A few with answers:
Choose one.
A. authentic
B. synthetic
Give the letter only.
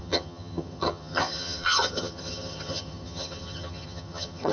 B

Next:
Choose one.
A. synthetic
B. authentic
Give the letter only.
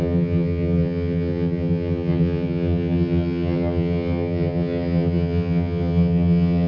A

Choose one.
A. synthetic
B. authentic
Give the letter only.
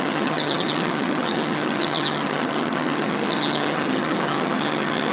A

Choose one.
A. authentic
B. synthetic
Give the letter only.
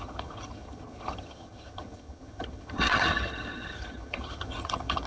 B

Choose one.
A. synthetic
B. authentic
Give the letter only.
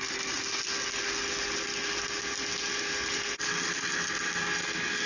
B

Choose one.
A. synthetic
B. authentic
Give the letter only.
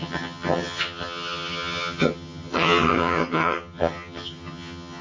A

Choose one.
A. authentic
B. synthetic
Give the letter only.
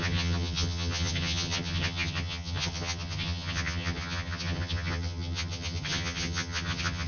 B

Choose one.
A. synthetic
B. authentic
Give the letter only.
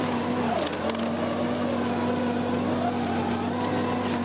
B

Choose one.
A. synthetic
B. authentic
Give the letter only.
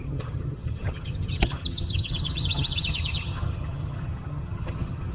A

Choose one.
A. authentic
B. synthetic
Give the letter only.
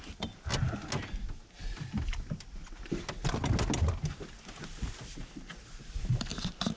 A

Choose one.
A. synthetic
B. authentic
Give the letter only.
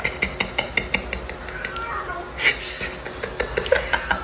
B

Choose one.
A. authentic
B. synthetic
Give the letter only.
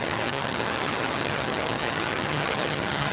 B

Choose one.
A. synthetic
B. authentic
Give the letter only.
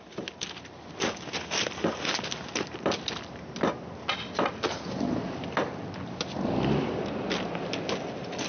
B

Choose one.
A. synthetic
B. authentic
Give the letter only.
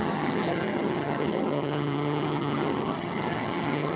A